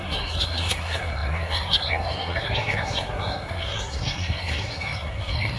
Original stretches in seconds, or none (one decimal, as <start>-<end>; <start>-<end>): none